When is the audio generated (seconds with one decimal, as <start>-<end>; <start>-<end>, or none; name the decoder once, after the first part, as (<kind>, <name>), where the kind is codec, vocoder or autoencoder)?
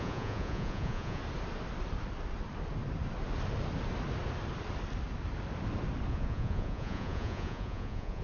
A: 0.0-1.2 (vocoder, Vocos); 6.1-8.2